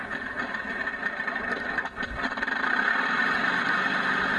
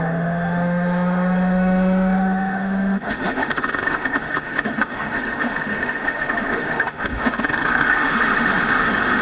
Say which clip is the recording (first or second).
first